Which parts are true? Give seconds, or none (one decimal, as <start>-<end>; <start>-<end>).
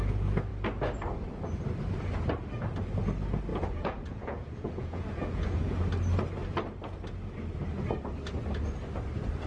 0.0-3.5; 5.8-9.5